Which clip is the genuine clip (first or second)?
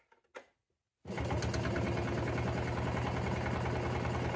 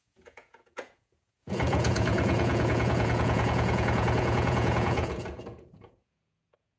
first